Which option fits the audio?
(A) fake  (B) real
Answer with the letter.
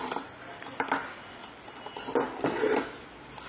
B